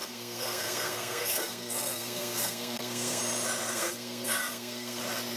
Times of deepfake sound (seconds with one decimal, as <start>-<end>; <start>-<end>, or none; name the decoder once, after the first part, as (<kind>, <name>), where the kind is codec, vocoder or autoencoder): 0.0-3.2 (codec, SNAC); 3.7-5.0